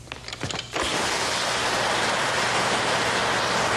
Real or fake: real